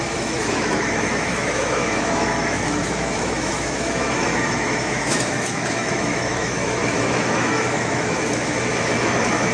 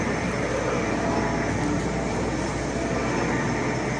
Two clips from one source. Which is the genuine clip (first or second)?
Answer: second